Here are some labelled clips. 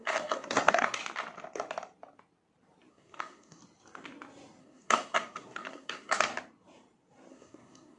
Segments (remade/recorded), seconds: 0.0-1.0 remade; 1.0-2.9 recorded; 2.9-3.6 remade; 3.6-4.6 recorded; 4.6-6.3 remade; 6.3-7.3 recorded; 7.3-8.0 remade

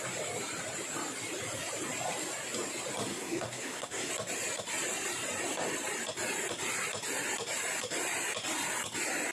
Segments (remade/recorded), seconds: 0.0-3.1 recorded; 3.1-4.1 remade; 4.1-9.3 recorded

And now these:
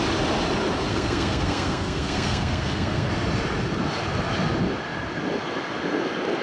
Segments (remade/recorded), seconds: 0.0-0.9 recorded; 0.9-3.1 remade; 3.1-6.4 recorded

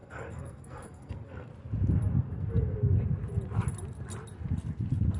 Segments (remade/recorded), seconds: 0.0-1.5 remade; 1.5-2.2 recorded; 2.2-2.8 remade; 2.8-5.2 recorded

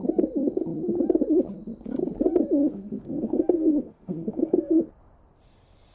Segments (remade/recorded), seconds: 0.0-2.6 recorded; 2.6-4.8 remade; 4.8-5.9 recorded